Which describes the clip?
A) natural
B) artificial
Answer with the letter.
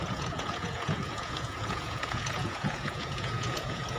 B